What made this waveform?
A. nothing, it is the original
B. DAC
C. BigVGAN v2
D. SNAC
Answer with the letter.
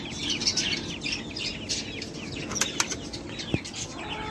A